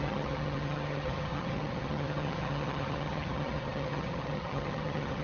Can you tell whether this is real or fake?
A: fake